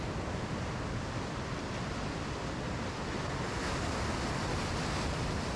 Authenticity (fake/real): real